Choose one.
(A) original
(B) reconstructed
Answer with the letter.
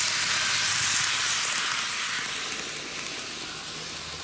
A